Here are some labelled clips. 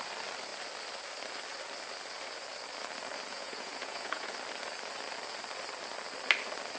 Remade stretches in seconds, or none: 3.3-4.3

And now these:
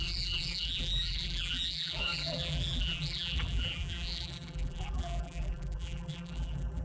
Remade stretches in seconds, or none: 0.0-6.8

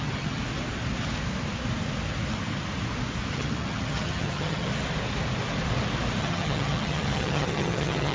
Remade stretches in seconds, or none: 0.0-0.4; 3.3-4.7; 6.2-8.1